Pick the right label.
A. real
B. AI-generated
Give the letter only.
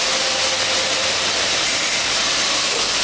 A